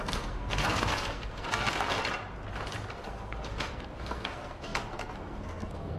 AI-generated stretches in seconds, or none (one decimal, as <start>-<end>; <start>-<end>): 0.0-2.0; 2.9-6.0